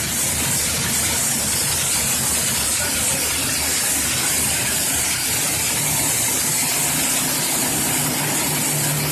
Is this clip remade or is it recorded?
recorded